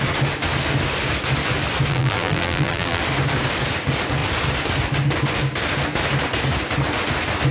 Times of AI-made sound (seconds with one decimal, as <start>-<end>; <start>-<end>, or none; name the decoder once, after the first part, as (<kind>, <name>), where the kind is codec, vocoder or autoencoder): 1.9-3.0 (vocoder, BigVGAN v2)